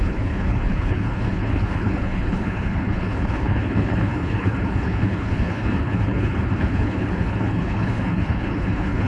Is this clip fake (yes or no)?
yes